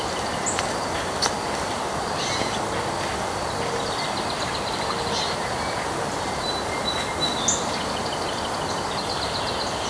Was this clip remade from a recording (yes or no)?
no